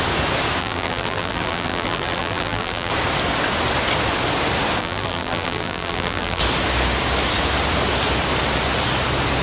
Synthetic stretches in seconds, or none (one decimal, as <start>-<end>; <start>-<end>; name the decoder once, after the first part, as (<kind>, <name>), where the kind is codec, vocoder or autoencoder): 0.6-2.9 (vocoder, BigVGAN v2); 4.8-6.4